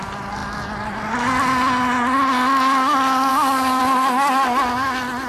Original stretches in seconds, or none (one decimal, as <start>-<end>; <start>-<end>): 0.0-3.3; 3.8-5.3